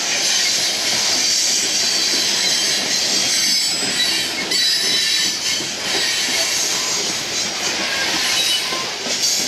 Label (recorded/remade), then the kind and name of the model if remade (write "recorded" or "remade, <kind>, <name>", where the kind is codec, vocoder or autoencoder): recorded